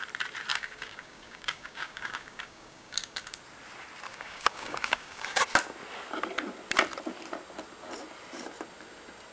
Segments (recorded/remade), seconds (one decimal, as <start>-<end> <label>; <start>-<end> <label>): 0.0-0.5 recorded; 0.5-3.4 remade; 3.4-4.1 recorded; 4.1-5.4 remade; 5.4-9.3 recorded